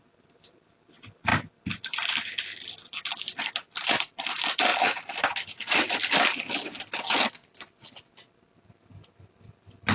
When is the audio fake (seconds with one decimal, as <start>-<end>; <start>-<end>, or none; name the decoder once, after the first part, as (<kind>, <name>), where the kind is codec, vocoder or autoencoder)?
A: 0.0-1.3 (vocoder, BigVGAN v2); 1.9-4.7; 8.1-9.9